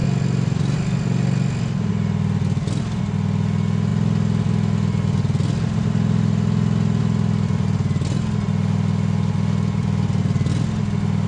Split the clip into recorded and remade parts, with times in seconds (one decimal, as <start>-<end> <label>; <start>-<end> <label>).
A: 0.0-11.3 recorded